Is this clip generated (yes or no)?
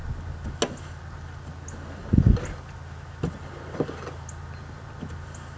no